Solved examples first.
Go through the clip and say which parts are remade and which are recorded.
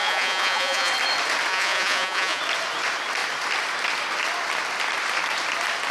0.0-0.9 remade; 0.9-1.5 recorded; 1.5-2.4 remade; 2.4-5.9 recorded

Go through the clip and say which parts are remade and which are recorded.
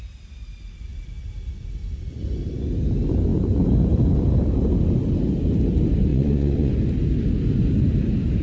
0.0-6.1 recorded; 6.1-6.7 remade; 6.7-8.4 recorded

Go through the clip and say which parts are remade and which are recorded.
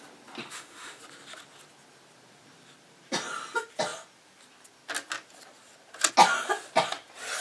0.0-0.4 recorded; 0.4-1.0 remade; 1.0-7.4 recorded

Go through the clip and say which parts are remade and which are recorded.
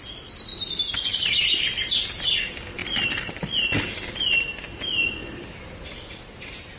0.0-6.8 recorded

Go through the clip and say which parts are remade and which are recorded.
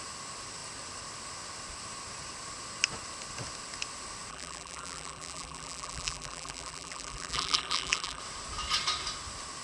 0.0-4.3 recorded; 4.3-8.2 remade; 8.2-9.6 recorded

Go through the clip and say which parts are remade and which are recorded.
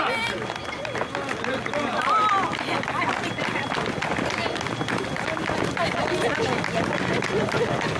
0.0-8.0 recorded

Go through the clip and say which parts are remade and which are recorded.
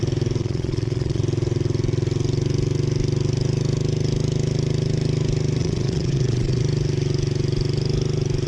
0.0-0.4 recorded; 0.4-1.2 remade; 1.2-5.6 recorded; 5.6-6.6 remade; 6.6-8.5 recorded